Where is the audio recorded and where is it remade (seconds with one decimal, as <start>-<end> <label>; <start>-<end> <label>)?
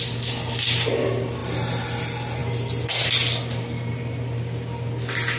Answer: 0.0-5.4 recorded